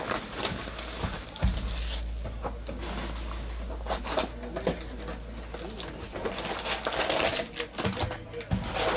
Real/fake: real